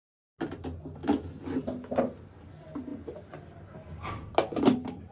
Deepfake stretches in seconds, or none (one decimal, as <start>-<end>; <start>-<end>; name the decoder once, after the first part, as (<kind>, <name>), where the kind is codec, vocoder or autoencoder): none